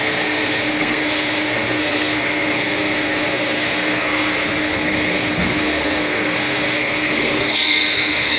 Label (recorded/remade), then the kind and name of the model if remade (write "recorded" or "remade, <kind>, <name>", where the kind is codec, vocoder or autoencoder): remade, codec, SNAC